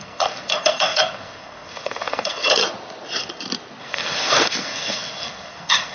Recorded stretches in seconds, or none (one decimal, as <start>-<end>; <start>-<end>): 2.6-3.8